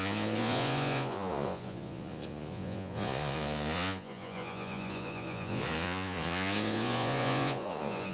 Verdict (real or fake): fake